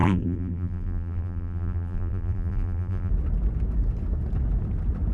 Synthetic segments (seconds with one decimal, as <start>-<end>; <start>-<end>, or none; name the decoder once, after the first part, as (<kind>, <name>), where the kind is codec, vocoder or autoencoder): 0.0-3.1 (vocoder, BigVGAN v2)